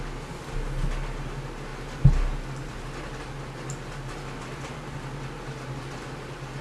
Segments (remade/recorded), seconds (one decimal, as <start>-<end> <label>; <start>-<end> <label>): 0.0-6.6 recorded

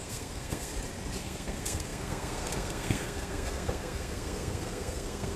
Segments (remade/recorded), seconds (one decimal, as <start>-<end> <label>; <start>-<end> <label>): 0.0-0.7 remade; 0.7-1.2 recorded; 1.2-5.4 remade

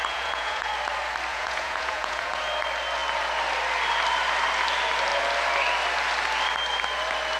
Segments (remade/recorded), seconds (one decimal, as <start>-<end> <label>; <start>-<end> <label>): 0.0-0.7 remade; 0.7-1.3 recorded; 1.3-2.4 remade; 2.4-7.4 recorded

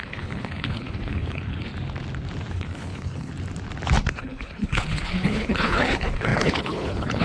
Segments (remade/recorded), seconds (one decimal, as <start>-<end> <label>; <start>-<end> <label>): 0.0-1.7 remade; 1.7-2.5 recorded; 2.5-3.3 remade; 3.3-4.1 recorded; 4.1-7.2 remade

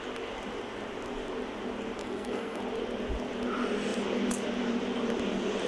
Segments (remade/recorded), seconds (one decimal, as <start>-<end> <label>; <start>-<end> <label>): 0.0-2.0 recorded; 2.0-2.6 remade; 2.6-5.7 recorded

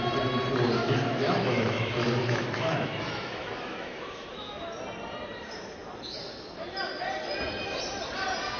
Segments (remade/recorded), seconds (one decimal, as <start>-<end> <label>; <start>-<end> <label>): 0.0-0.8 recorded; 0.8-4.6 remade; 4.6-8.6 recorded